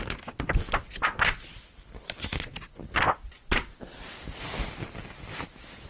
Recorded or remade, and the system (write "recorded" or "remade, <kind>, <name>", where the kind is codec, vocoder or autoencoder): recorded